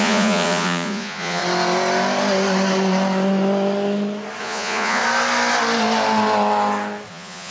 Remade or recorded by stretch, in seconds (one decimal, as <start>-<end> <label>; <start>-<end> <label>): 0.0-1.4 remade; 1.4-4.4 recorded; 4.4-5.0 remade; 5.0-7.1 recorded; 7.1-7.5 remade